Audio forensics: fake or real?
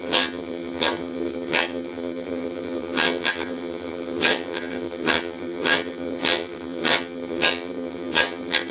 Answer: fake